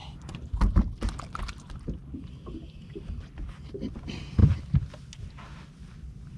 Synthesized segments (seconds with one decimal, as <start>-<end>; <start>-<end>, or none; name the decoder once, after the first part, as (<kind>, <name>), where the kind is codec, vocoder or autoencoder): none